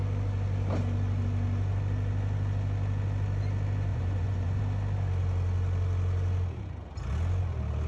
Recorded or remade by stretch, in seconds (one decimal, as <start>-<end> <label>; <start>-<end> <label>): 0.0-3.9 recorded; 3.9-4.6 remade; 4.6-7.9 recorded